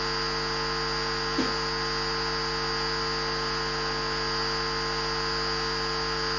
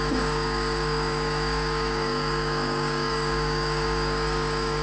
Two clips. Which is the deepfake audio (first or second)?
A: second